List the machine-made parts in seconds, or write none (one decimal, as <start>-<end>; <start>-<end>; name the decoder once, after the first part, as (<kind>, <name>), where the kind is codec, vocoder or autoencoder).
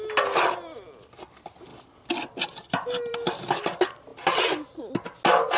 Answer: none